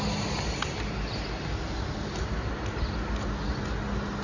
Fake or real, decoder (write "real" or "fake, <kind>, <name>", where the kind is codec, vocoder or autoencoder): real